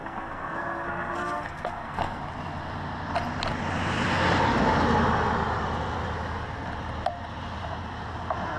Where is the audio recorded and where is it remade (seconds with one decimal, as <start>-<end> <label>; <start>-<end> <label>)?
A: 0.0-2.2 remade; 2.2-8.6 recorded